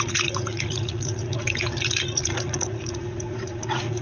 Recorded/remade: remade